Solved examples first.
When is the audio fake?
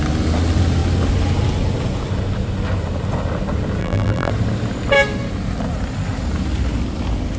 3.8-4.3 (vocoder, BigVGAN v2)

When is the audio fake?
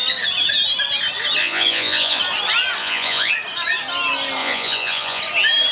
1.4-2.2 (vocoder, Vocos); 2.8-3.3; 4.4-5.2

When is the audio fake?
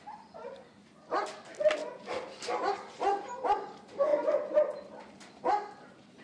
none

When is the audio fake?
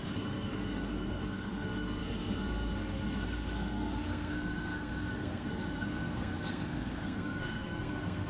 0.0-8.3 (codec, SNAC)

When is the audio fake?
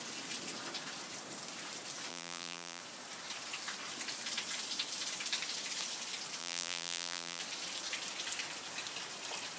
2.1-2.8 (vocoder, BigVGAN v2); 6.4-7.4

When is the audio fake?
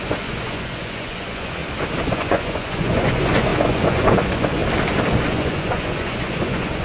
0.0-1.6 (vocoder, Vocos); 2.1-4.6; 5.2-6.8